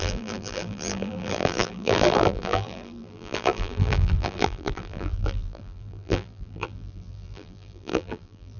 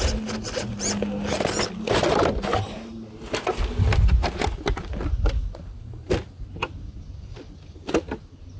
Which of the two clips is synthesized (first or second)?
first